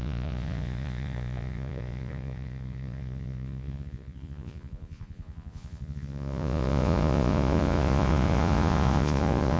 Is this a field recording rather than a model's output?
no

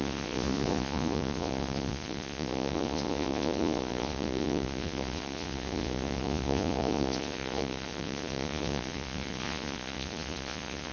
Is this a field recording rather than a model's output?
no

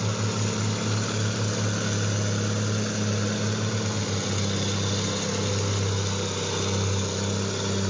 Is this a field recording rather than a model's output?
yes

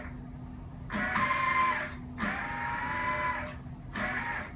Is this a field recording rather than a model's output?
yes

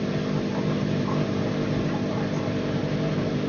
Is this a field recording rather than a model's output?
yes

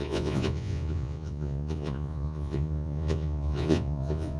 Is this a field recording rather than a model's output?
no